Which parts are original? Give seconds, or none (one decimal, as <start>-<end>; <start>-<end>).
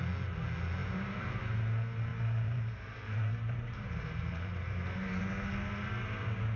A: 0.0-0.8; 1.4-2.1; 5.2-6.6